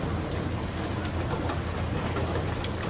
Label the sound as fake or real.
real